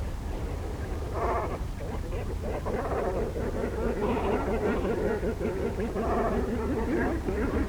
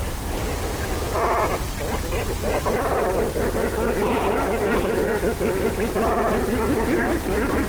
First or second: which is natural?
second